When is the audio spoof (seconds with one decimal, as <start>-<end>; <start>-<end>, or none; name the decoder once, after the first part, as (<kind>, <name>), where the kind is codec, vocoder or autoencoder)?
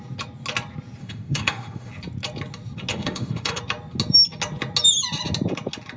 1.0-1.9 (autoencoder, DAC-VAE); 2.9-3.6